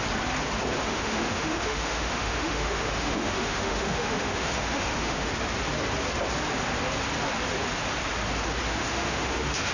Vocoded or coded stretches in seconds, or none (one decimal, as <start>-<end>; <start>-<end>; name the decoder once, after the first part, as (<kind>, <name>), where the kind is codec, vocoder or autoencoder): 0.8-5.3 (autoencoder, DAC-VAE); 8.8-9.7